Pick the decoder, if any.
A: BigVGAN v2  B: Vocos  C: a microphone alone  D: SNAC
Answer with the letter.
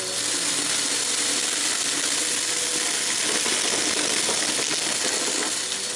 C